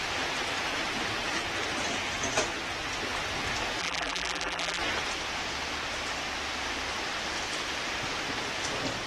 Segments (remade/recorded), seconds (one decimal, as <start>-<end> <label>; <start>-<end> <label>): 0.0-3.8 recorded; 3.8-4.8 remade; 4.8-9.1 recorded